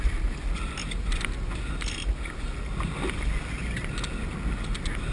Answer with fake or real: real